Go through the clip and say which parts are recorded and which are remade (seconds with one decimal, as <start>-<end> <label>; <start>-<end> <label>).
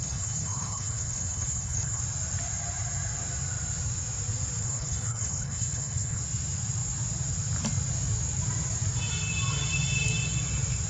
0.0-2.0 remade; 2.0-4.6 recorded; 4.6-6.2 remade; 6.2-10.9 recorded